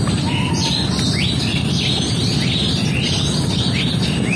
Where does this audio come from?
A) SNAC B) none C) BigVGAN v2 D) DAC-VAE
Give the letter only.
B